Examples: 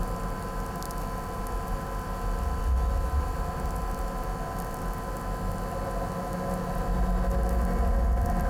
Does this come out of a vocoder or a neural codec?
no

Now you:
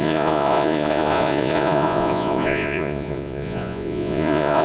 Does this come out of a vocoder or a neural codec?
yes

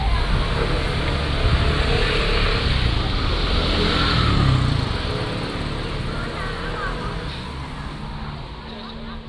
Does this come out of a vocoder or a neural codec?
no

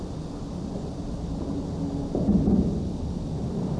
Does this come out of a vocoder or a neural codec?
no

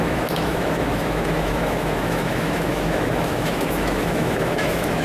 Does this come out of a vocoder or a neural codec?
yes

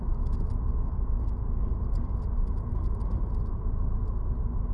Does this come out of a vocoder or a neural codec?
no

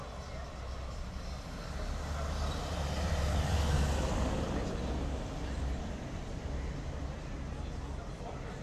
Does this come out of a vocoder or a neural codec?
no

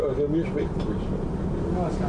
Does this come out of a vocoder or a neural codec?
no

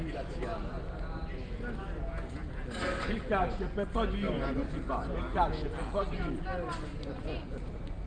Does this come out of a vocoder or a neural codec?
no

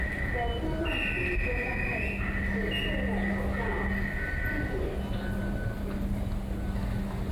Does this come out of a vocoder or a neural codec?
no